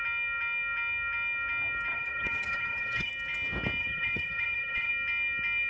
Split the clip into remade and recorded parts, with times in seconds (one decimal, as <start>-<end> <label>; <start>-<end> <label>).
0.0-1.9 recorded; 1.9-3.1 remade; 3.1-3.8 recorded; 3.8-4.9 remade; 4.9-5.7 recorded